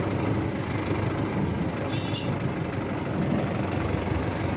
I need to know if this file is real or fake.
real